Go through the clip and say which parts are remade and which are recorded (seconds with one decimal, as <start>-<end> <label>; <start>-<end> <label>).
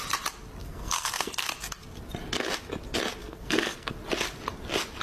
0.0-0.6 recorded; 0.6-1.3 remade; 1.3-3.2 recorded; 3.2-3.9 remade; 3.9-5.0 recorded